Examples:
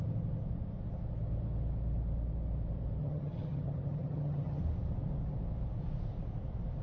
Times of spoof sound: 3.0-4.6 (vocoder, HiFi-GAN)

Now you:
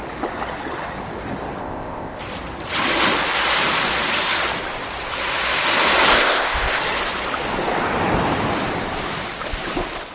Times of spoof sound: 1.6-2.2 (codec, ZipCodec); 6.1-6.8

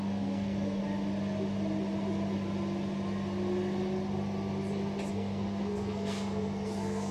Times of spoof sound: 0.0-0.8 (codec, SNAC); 5.1-7.1

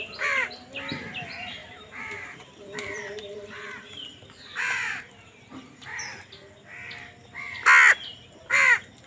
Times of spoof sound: 1.6-6.0 (vocoder, BigVGAN v2)

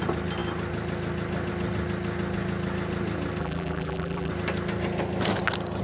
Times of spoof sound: 3.4-4.3 (vocoder, BigVGAN v2)

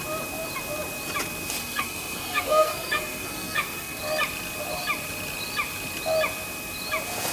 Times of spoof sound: 1.6-4.0 (codec, SNAC)

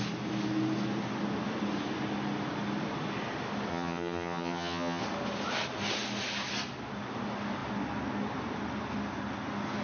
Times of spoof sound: 3.7-5.0 (vocoder, HiFi-GAN)

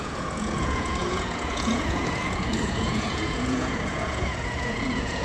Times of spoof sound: 0.0-5.2 (vocoder, Vocos)